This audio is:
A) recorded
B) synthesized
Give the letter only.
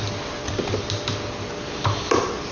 A